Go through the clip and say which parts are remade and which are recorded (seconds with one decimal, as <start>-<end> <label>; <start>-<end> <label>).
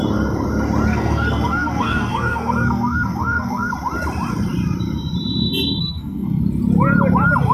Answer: 0.0-0.9 recorded; 0.9-3.7 remade; 3.7-5.8 recorded; 5.8-6.4 remade; 6.4-7.5 recorded